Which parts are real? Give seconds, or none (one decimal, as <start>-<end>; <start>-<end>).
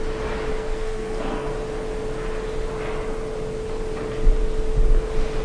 0.0-0.5; 1.5-5.4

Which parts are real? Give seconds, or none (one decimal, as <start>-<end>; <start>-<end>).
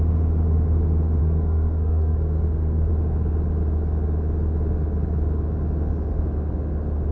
0.0-1.2; 2.9-7.1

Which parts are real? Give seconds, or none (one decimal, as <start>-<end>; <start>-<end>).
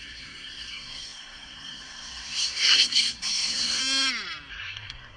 3.8-4.5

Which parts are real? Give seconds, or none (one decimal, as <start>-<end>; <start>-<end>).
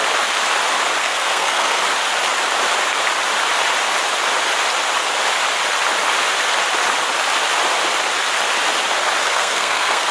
0.0-1.0; 1.8-9.2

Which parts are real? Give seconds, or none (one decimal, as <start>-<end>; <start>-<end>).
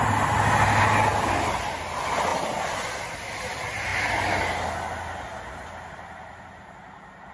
0.0-7.3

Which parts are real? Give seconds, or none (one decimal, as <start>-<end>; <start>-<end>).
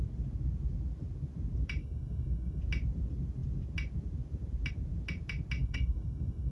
0.0-1.8; 2.6-5.6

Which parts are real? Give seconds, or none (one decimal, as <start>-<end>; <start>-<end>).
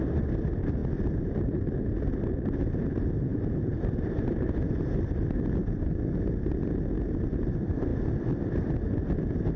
0.0-9.6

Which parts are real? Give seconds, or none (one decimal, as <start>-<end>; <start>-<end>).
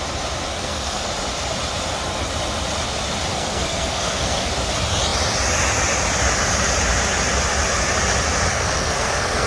0.0-0.5; 1.1-3.3; 4.5-8.5